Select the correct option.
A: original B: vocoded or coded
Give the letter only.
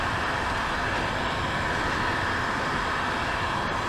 A